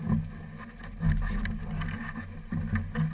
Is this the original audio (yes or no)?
yes